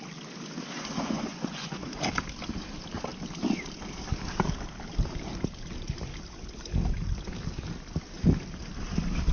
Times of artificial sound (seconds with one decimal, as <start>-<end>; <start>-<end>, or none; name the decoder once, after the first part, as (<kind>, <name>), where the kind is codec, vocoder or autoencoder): 0.8-2.0 (vocoder, Vocos)